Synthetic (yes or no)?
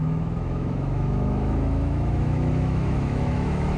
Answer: yes